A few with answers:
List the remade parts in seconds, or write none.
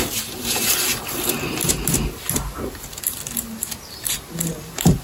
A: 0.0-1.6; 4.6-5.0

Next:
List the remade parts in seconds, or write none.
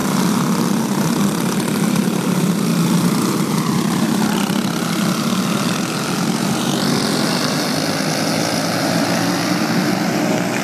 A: 2.7-3.8